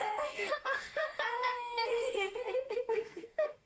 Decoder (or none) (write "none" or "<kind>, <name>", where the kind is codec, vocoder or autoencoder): codec, SNAC